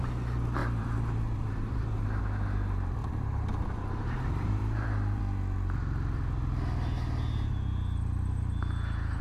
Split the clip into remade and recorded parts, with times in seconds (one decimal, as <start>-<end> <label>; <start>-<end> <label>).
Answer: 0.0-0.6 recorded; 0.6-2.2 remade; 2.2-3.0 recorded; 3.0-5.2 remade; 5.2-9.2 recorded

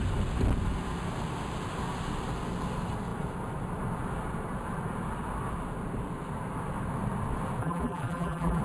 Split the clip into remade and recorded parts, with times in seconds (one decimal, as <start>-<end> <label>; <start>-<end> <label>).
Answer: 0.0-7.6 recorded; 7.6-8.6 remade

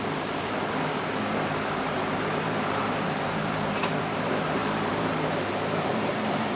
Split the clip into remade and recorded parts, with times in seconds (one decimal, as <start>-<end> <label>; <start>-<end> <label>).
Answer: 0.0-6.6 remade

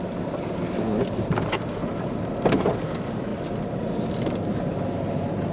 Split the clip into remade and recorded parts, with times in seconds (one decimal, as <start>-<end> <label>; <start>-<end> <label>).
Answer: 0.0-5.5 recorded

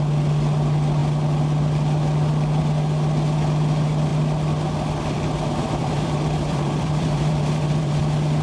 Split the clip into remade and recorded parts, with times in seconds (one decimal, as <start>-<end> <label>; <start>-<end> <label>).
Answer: 0.0-5.8 recorded; 5.8-8.0 remade; 8.0-8.4 recorded

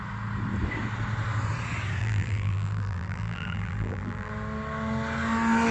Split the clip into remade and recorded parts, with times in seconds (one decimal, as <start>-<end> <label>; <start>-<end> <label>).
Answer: 0.0-2.0 recorded; 2.0-4.3 remade; 4.3-5.7 recorded